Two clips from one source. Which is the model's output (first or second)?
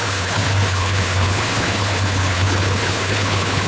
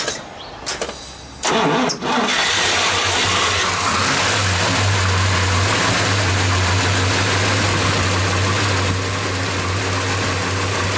first